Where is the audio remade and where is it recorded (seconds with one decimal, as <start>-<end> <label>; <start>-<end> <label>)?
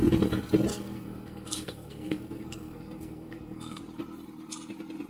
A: 0.0-0.7 recorded; 0.7-3.8 remade; 3.8-5.1 recorded